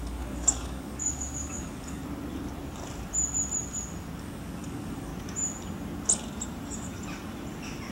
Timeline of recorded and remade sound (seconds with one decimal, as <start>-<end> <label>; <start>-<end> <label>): 0.0-2.0 remade; 2.0-4.2 recorded; 4.2-5.1 remade; 5.1-7.9 recorded